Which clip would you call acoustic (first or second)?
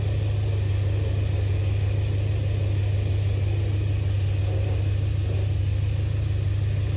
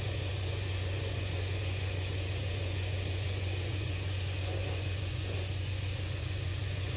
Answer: first